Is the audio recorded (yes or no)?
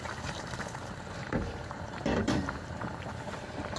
no